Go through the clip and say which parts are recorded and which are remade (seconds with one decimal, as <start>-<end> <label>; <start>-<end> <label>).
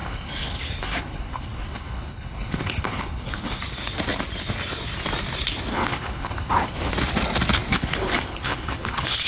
0.0-3.6 remade; 3.6-5.7 recorded; 5.7-6.9 remade; 6.9-7.7 recorded; 7.7-9.3 remade